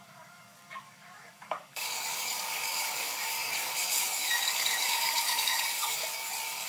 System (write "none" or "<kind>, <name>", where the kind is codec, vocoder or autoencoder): codec, DAC